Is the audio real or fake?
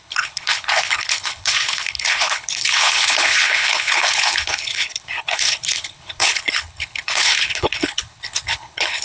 fake